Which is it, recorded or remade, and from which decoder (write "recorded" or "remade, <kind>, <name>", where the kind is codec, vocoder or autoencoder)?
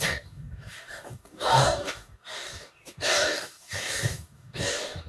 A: remade, codec, DAC